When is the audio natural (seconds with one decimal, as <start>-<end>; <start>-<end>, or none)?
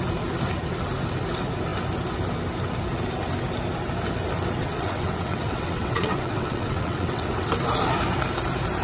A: 0.0-4.6; 7.5-8.8